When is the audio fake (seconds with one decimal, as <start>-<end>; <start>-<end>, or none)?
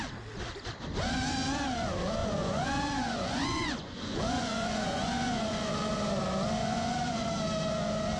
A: 2.2-5.7; 6.6-7.3